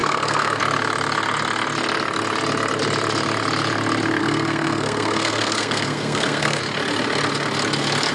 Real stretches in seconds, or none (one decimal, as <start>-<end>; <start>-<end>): 0.6-4.2; 6.6-8.1